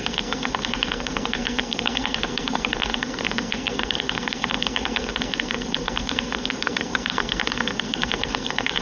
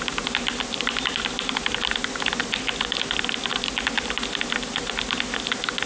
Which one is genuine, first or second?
second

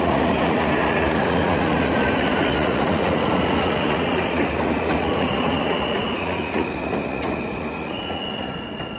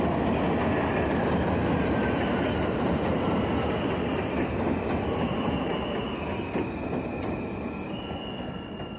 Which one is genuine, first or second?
second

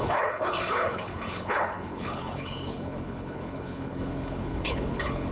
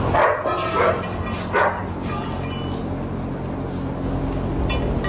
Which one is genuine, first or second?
second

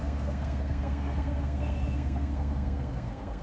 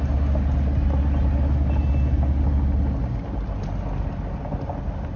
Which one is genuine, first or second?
second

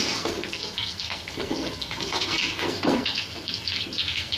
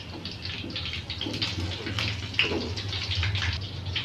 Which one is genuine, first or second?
second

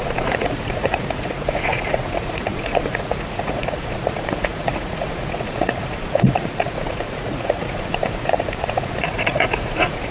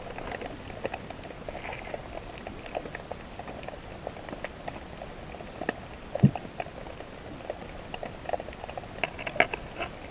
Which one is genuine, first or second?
second